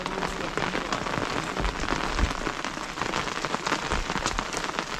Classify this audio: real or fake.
real